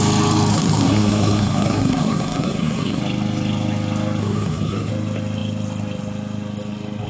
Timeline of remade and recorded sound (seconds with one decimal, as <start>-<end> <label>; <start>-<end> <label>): 0.0-0.5 recorded; 0.5-3.0 remade; 3.0-4.2 recorded; 4.2-4.9 remade; 4.9-7.1 recorded